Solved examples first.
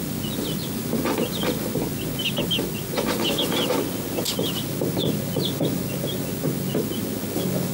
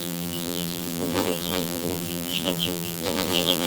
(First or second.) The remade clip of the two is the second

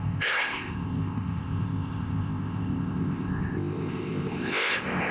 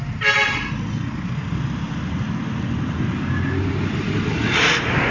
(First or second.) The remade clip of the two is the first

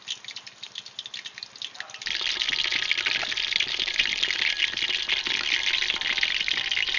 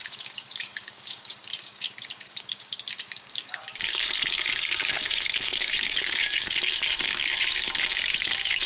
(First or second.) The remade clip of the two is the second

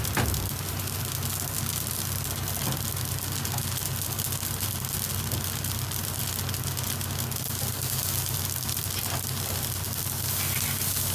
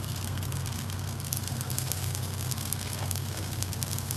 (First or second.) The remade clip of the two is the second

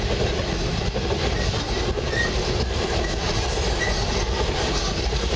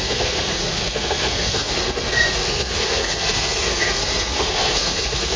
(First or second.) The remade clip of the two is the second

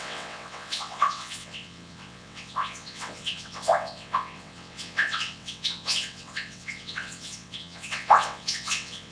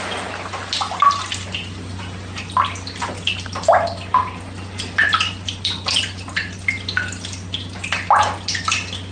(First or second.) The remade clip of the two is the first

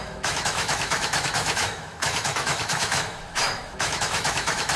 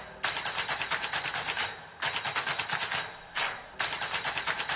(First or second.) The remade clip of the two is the first